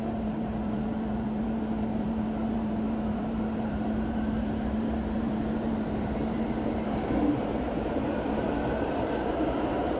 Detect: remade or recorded remade